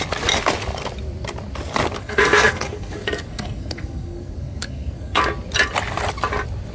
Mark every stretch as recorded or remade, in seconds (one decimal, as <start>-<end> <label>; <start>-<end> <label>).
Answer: 0.0-2.0 recorded; 2.0-5.2 remade; 5.2-6.7 recorded